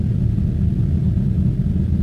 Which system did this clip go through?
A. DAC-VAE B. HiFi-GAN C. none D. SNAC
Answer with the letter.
C